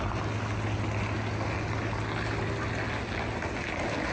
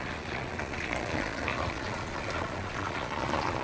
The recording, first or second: first